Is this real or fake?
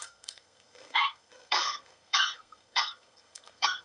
fake